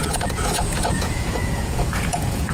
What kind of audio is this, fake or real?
fake